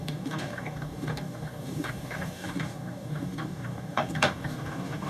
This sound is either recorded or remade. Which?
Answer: remade